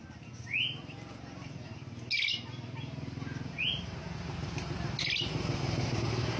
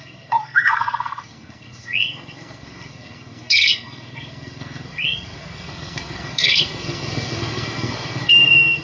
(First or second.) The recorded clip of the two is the first